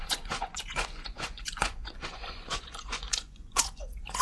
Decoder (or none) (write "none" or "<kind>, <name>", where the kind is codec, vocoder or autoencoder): vocoder, Vocos